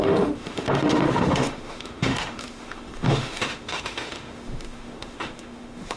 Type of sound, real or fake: fake